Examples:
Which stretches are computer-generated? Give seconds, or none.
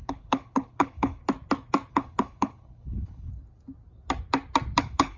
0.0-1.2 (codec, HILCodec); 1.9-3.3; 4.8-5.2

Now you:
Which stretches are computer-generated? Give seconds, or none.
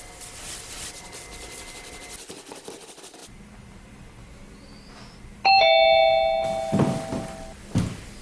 none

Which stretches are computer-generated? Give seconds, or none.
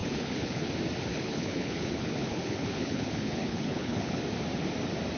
0.0-0.7 (codec, HILCodec); 1.1-4.2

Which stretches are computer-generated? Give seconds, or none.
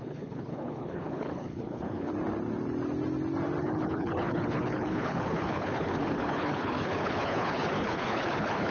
0.0-2.1 (codec, HILCodec); 3.6-8.7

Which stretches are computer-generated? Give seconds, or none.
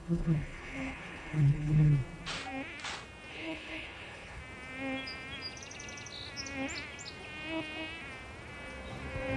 0.0-1.9 (codec, HILCodec); 3.3-4.4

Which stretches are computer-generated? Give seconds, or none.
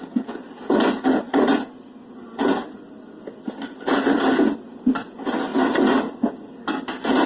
none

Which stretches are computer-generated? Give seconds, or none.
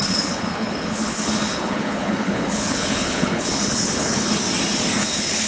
0.0-4.3 (codec, HILCodec); 5.0-5.5